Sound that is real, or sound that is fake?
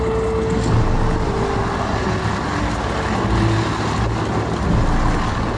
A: real